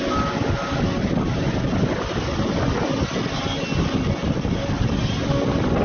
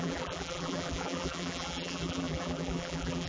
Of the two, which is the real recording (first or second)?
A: first